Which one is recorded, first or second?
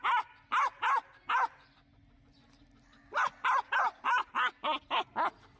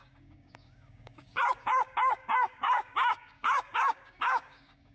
first